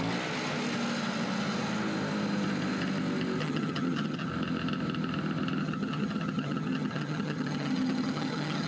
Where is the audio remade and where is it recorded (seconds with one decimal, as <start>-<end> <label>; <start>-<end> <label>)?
0.0-3.4 recorded; 3.4-4.3 remade; 4.3-5.6 recorded; 5.6-8.7 remade